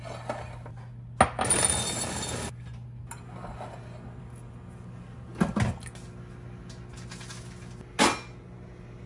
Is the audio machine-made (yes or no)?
no